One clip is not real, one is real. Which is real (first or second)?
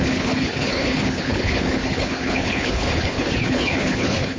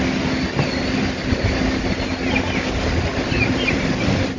second